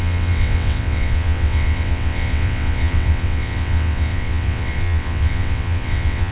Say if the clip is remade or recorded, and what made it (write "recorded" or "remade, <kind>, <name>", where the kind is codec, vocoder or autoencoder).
remade, vocoder, WaveNeXt